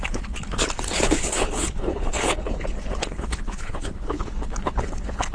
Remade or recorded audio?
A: remade